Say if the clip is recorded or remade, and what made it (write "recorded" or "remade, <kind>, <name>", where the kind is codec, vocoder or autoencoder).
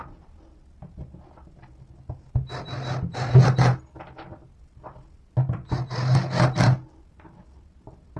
recorded